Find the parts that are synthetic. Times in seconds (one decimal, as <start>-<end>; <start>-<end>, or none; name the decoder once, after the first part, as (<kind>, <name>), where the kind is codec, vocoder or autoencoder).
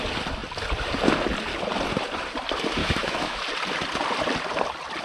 2.8-3.4 (autoencoder, DAC-VAE)